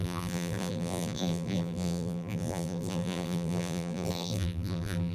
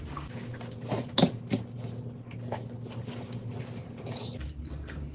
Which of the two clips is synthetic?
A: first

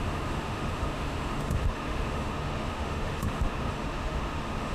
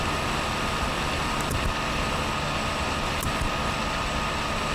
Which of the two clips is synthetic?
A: first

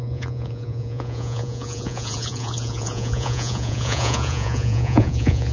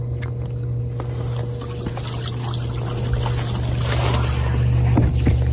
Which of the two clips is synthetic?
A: first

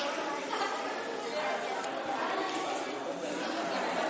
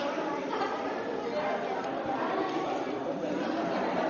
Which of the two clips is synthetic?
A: second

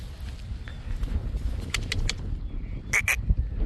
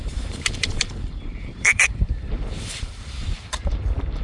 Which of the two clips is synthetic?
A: second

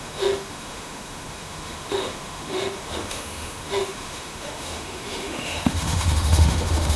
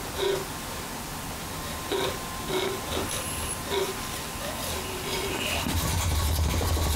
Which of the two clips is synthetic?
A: first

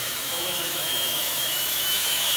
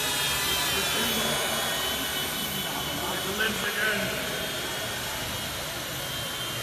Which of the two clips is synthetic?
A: first